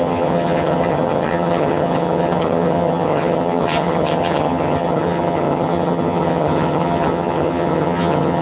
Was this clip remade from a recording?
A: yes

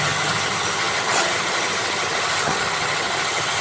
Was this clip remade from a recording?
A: yes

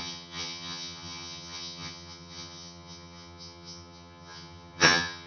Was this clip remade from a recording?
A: yes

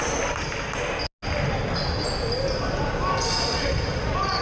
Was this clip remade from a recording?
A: no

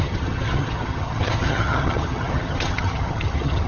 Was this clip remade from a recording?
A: yes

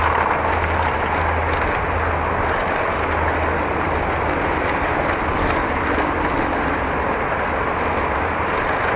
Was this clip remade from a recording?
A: no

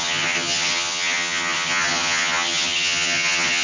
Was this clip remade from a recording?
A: yes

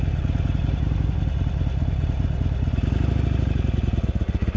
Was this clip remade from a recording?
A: no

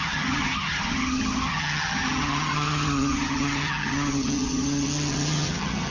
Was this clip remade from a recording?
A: yes